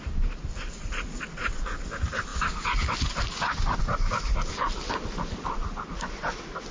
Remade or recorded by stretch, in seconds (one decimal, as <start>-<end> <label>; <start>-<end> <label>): 0.0-6.7 recorded